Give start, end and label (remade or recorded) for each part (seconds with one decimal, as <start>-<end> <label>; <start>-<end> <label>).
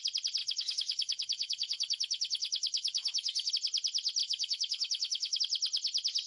0.0-0.4 recorded; 0.4-3.5 remade; 3.5-4.2 recorded; 4.2-5.4 remade; 5.4-6.3 recorded